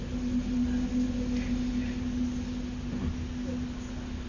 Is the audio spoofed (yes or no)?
no